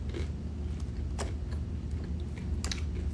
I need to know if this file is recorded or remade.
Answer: recorded